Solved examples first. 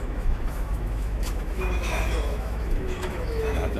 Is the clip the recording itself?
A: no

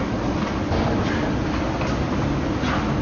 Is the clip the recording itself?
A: yes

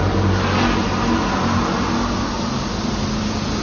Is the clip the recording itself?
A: yes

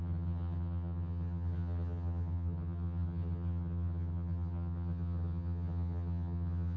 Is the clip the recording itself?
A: no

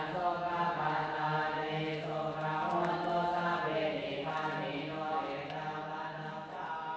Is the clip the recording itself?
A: no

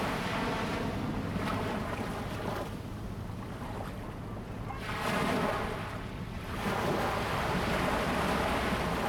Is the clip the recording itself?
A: yes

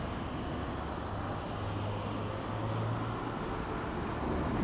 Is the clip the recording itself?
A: yes